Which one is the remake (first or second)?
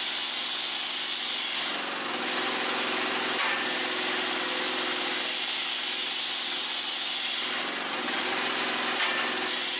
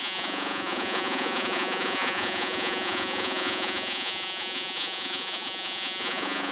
second